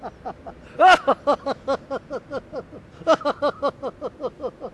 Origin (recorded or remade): recorded